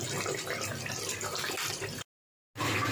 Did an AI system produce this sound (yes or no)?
no